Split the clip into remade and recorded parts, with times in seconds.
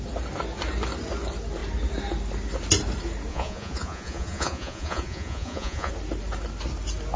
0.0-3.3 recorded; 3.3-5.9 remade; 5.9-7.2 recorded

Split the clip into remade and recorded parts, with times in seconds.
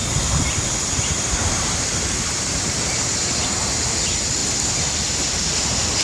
0.0-3.6 remade; 3.6-6.0 recorded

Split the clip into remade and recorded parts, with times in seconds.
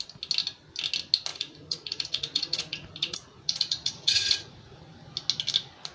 0.0-1.3 recorded; 1.3-4.8 remade; 4.8-5.9 recorded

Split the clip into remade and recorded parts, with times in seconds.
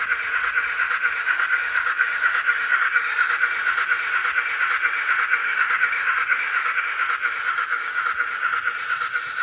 0.0-1.2 recorded; 1.2-3.4 remade; 3.4-5.4 recorded; 5.4-6.8 remade; 6.8-7.5 recorded; 7.5-8.0 remade; 8.0-9.4 recorded